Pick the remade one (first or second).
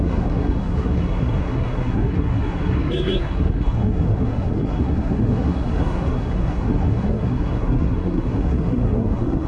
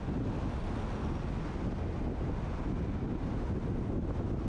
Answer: first